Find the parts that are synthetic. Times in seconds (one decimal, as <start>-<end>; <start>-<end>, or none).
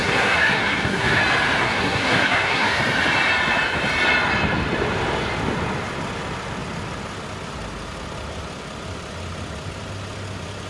0.0-1.2; 1.6-2.8